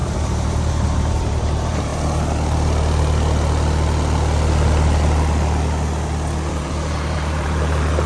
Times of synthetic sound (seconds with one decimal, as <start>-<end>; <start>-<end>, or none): 0.0-1.9; 6.5-8.1